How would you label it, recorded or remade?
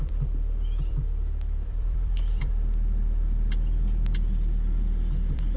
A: remade